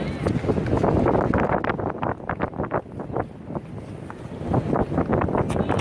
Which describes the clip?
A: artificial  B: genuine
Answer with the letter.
B